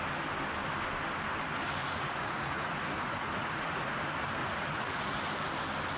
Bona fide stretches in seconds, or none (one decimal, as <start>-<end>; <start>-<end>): 0.0-1.8; 4.0-4.4; 5.2-6.0